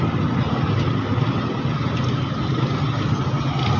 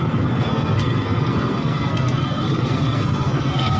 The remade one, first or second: second